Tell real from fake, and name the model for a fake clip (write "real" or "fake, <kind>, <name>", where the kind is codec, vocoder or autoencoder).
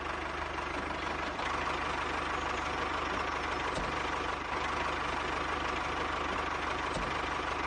real